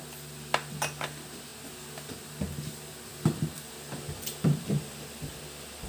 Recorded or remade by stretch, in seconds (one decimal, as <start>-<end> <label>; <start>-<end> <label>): 0.0-5.9 recorded